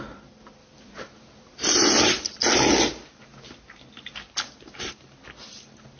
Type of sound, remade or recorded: recorded